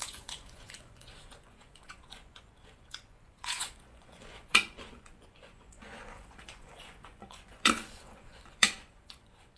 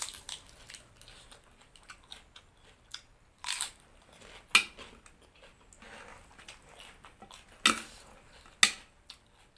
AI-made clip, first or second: first